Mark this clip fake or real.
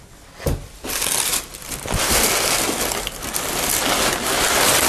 real